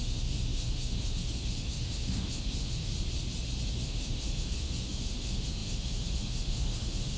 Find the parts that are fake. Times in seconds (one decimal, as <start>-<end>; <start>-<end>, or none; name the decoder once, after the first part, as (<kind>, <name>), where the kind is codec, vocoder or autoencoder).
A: 0.0-2.9 (autoencoder, DAC-VAE); 3.7-7.2